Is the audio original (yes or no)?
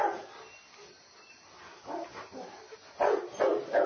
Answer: yes